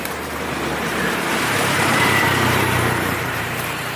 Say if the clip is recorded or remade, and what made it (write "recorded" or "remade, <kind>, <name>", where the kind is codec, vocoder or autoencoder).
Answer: remade, vocoder, BigVGAN v2